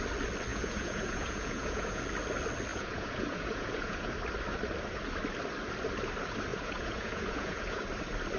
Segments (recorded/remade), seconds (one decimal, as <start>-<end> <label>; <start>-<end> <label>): 0.0-0.5 recorded; 0.5-2.0 remade; 2.0-2.7 recorded; 2.7-4.1 remade; 4.1-6.5 recorded; 6.5-7.8 remade; 7.8-8.4 recorded